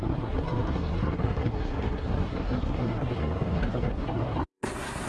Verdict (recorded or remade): remade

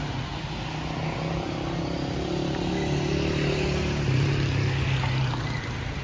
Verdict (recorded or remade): recorded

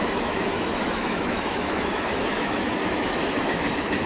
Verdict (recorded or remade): remade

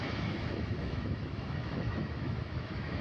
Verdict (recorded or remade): remade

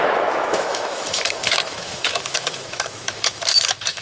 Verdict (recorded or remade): remade